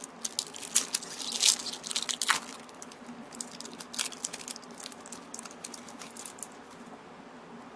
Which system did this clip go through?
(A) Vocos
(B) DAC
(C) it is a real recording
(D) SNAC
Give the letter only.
C